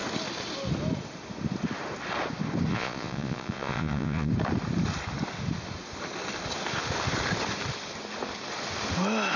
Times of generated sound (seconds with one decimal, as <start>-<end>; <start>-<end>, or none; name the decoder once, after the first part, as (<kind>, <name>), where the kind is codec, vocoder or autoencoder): 2.7-4.3 (vocoder, Vocos)